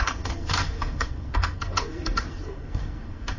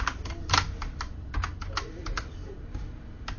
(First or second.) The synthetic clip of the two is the first